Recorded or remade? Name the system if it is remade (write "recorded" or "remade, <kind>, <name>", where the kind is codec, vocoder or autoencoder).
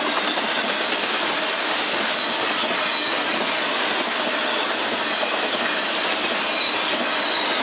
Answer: recorded